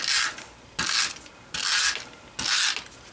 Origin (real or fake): real